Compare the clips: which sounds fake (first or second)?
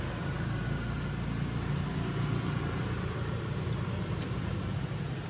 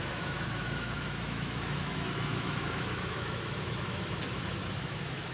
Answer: second